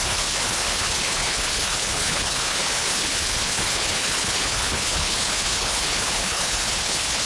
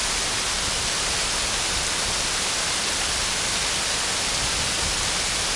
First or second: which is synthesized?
first